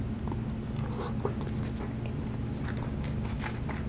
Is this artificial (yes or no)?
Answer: no